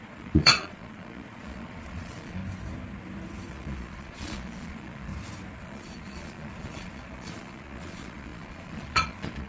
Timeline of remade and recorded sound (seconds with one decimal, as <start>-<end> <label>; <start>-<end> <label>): 0.0-2.4 remade; 2.4-3.5 recorded; 3.5-5.1 remade; 5.1-5.6 recorded; 5.6-9.5 remade